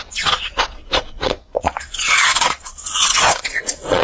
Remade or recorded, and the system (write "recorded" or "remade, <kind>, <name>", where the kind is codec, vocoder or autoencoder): remade, vocoder, Vocos